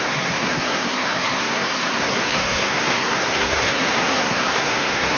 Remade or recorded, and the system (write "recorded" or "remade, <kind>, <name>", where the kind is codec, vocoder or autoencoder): remade, codec, SNAC